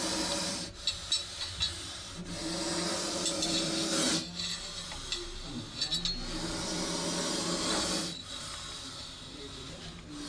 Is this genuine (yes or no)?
yes